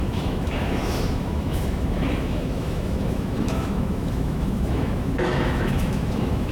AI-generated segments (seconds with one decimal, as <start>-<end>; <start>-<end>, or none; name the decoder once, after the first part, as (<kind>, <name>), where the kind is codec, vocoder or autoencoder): 0.0-6.5 (autoencoder, DAC-VAE)